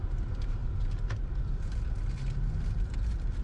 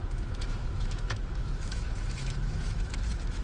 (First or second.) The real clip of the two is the first